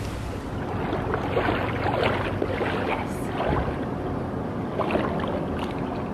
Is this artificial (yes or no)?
no